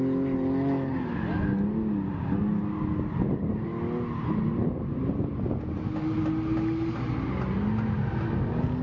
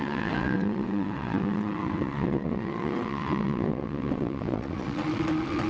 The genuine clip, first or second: first